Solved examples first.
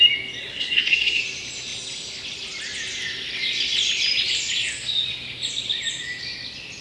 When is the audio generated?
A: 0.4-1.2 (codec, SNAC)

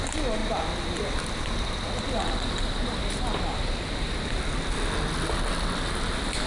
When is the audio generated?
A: none

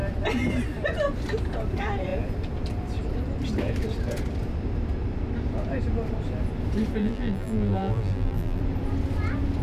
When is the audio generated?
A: 7.0-8.6 (vocoder, BigVGAN v2)

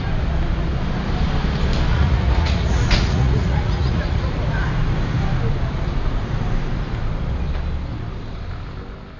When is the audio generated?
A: 1.9-4.3 (vocoder, Vocos)

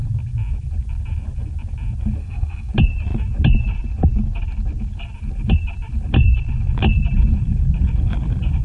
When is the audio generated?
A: 2.2-2.7 (codec, SNAC)